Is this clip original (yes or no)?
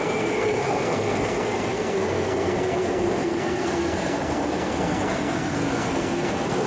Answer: no